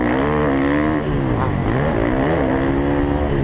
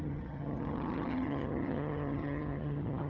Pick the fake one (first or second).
second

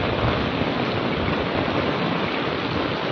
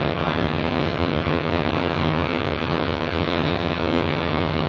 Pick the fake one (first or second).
second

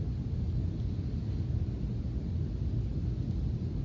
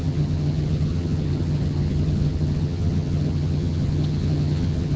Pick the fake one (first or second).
second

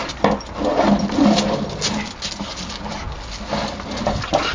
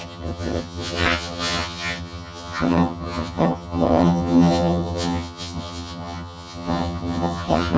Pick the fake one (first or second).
second